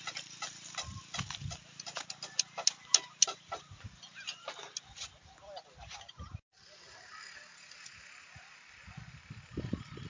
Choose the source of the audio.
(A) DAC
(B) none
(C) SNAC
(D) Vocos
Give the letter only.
B